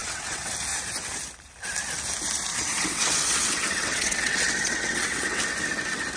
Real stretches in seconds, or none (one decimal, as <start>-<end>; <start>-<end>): 0.5-2.5; 5.4-6.2